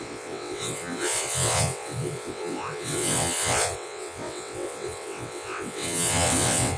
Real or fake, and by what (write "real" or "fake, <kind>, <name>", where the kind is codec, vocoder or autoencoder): fake, vocoder, WaveNeXt